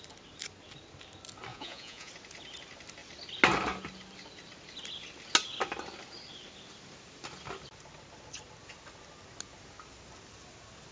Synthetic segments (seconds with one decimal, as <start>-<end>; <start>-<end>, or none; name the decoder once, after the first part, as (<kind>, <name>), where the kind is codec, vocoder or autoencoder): 1.5-2.1 (vocoder, Vocos)